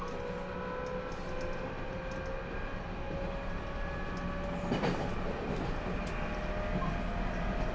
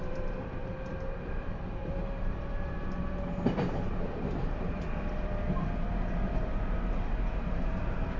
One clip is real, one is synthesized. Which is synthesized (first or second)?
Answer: second